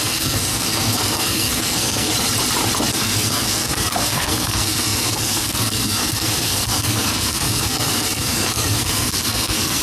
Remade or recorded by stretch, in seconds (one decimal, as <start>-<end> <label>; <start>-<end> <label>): 0.0-2.1 remade; 2.1-2.9 recorded; 2.9-9.8 remade